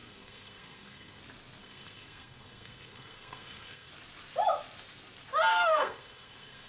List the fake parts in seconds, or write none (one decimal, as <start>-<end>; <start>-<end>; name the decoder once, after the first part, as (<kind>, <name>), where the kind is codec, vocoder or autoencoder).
0.0-1.2 (codec, SNAC); 1.6-3.9; 5.5-6.7